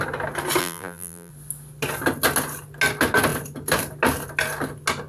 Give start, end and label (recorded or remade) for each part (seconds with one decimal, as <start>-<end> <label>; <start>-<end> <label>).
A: 0.0-0.6 recorded; 0.6-1.3 remade; 1.3-5.1 recorded